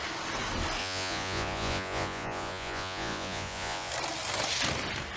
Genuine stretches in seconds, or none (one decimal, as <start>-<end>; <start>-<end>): 0.0-0.8; 3.9-5.2